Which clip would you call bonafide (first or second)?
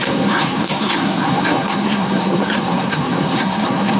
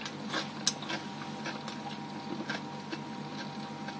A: second